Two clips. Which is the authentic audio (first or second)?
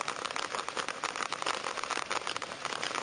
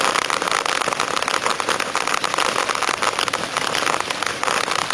second